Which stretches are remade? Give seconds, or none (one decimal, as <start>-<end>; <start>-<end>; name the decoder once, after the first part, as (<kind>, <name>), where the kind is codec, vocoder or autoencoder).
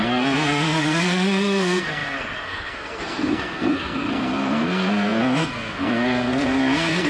0.0-7.1 (codec, SNAC)